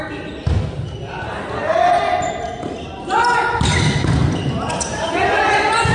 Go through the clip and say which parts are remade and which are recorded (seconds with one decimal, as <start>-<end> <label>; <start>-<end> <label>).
0.0-5.9 recorded